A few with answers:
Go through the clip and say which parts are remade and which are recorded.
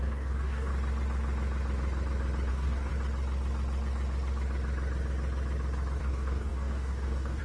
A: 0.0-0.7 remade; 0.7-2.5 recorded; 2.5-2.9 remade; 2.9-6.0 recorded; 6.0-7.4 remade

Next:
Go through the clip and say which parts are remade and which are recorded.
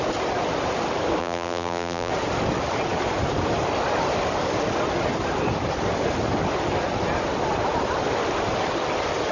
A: 0.0-1.2 recorded; 1.2-2.1 remade; 2.1-9.3 recorded